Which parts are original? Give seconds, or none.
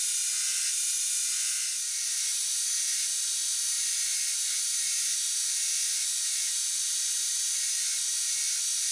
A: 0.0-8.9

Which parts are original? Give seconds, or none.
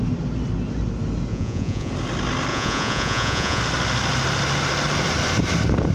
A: 0.0-1.3; 1.9-2.5; 3.6-5.9